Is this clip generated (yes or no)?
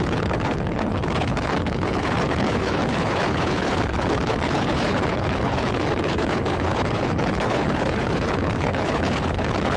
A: yes